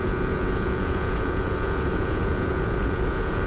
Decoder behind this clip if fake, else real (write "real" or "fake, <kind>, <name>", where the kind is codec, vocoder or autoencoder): fake, vocoder, Vocos